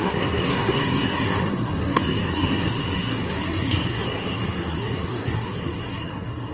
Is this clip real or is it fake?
fake